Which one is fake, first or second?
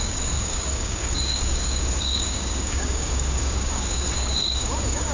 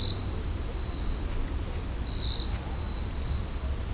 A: first